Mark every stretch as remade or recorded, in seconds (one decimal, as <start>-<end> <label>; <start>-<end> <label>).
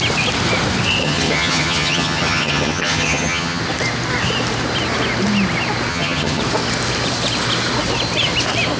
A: 0.0-1.0 recorded; 1.0-3.6 remade; 3.6-5.9 recorded; 5.9-6.4 remade; 6.4-8.8 recorded